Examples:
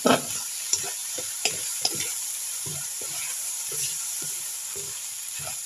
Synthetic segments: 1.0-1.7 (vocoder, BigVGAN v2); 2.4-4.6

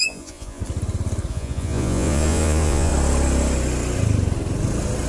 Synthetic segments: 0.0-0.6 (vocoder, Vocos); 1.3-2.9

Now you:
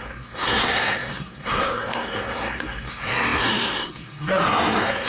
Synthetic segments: 0.0-5.1 (codec, SNAC)

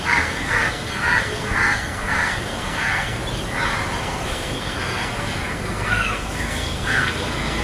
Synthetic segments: 0.0-3.2 (codec, SNAC); 4.0-7.6

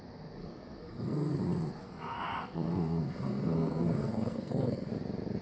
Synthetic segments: 0.4-1.4 (codec, SNAC); 1.8-4.9